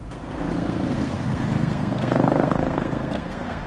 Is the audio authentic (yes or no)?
no